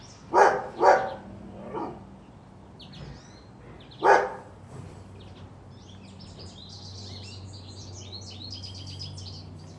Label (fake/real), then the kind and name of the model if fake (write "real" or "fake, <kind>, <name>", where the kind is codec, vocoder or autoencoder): real